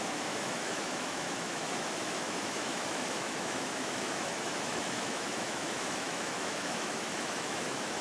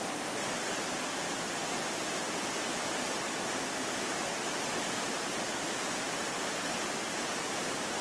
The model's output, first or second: first